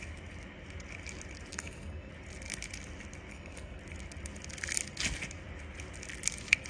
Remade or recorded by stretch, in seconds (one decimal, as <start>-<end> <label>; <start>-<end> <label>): 0.0-1.5 recorded; 1.5-2.1 remade; 2.1-3.3 recorded; 3.3-3.8 remade; 3.8-6.7 recorded